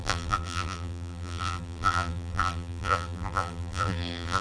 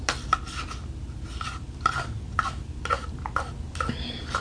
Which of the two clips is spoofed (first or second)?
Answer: first